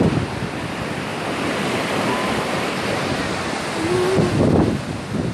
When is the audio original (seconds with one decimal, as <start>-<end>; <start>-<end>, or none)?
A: 0.0-5.3